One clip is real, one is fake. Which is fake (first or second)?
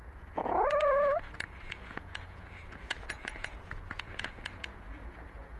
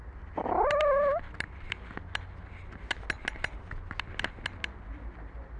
first